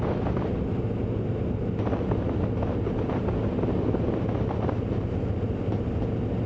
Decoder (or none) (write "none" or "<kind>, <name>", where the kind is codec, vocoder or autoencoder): none